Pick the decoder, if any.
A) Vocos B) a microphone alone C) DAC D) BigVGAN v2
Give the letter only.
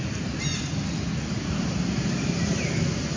B